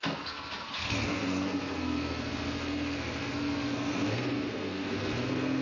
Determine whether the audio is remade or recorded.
remade